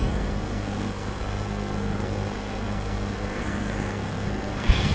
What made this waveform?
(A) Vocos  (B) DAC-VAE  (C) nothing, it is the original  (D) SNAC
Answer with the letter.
D